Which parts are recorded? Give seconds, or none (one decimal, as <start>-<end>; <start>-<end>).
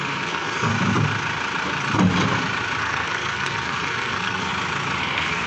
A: 0.7-2.8; 4.5-5.0